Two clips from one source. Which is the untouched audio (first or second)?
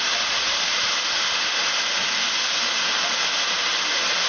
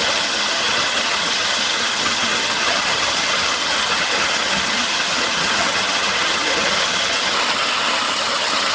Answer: first